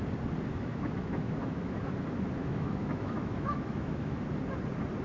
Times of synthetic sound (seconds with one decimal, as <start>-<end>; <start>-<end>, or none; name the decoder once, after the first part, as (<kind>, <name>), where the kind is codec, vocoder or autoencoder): 0.5-1.9 (autoencoder, DAC-VAE); 2.4-4.2